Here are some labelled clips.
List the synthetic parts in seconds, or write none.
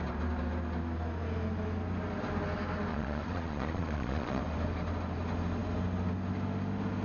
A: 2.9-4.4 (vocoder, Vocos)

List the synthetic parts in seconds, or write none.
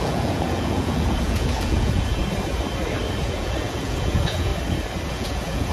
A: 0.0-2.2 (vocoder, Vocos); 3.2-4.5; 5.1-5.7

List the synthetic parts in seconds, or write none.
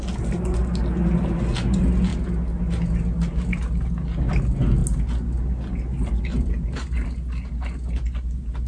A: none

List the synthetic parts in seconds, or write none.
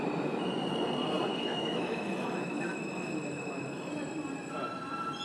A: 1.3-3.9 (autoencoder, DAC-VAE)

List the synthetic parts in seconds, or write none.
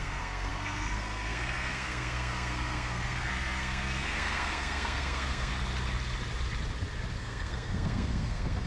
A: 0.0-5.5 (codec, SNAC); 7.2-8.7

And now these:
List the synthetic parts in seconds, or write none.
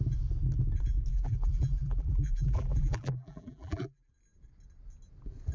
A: 1.1-4.1 (vocoder, BigVGAN v2)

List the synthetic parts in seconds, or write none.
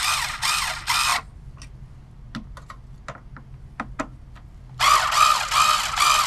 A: none